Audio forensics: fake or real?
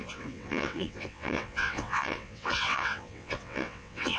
fake